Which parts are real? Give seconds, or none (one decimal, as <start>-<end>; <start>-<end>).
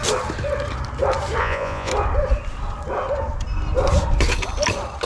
0.0-1.4; 1.9-5.1